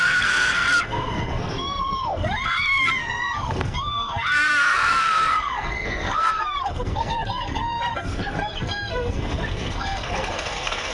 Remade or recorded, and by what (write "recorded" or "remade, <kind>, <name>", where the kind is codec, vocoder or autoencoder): remade, codec, SNAC